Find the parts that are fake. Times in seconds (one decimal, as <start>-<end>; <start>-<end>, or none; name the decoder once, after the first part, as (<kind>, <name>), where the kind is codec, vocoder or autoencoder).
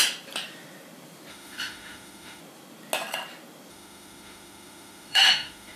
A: 1.3-2.4 (autoencoder, DAC-VAE); 3.7-5.8